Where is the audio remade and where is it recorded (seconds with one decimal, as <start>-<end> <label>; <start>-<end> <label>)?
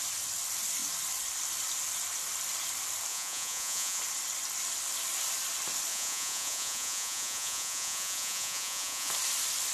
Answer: 0.0-3.1 recorded; 3.1-4.0 remade; 4.0-5.9 recorded; 5.9-9.1 remade; 9.1-9.7 recorded